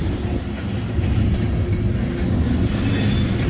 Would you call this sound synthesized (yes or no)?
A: no